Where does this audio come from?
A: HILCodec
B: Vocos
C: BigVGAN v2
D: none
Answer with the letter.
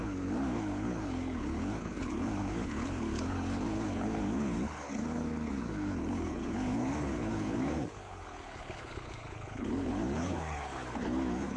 A